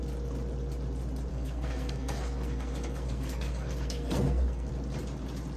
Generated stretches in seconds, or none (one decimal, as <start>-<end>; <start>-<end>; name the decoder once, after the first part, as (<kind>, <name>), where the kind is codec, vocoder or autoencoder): 1.3-4.7 (codec, SNAC)